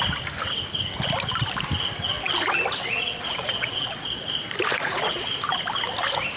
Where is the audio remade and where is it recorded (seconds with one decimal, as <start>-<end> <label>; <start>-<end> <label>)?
0.0-2.8 recorded; 2.8-4.2 remade; 4.2-4.7 recorded; 4.7-5.3 remade; 5.3-6.4 recorded